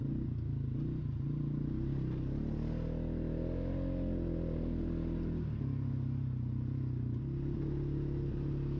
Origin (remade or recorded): recorded